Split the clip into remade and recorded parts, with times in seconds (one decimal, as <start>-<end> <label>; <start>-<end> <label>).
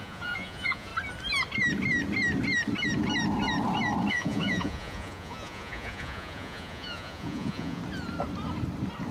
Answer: 0.0-0.9 remade; 0.9-4.1 recorded; 4.1-7.8 remade; 7.8-9.1 recorded